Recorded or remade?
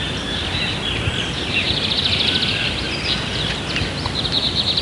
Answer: recorded